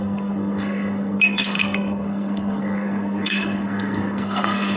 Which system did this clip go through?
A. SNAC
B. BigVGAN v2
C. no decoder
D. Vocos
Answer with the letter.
A